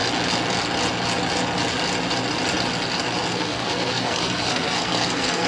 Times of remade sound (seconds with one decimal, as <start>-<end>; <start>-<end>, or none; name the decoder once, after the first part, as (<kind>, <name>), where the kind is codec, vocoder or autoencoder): 3.3-5.5 (codec, SNAC)